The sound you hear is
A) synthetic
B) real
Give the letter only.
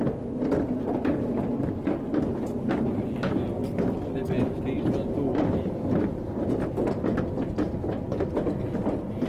B